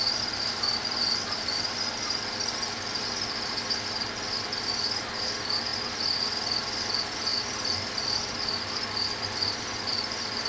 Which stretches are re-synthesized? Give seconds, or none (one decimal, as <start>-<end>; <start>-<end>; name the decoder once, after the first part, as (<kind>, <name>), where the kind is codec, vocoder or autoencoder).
0.0-1.9 (vocoder, BigVGAN v2); 7.3-8.2